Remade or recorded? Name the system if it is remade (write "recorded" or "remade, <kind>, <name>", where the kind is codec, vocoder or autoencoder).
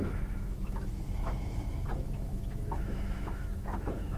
remade, autoencoder, DAC-VAE